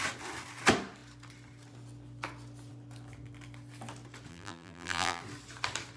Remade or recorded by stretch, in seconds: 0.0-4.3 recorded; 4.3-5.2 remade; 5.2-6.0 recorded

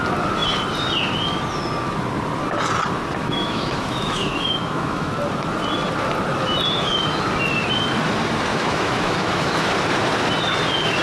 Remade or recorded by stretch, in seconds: 0.0-3.2 recorded; 3.2-5.1 remade; 5.1-8.5 recorded; 8.5-9.7 remade; 9.7-11.0 recorded

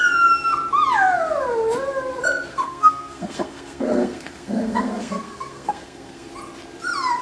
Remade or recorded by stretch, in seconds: 0.0-2.5 recorded; 2.5-6.3 remade; 6.3-7.2 recorded

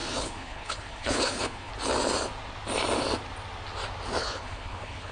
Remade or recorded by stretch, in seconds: 0.0-1.7 remade; 1.7-4.2 recorded; 4.2-5.1 remade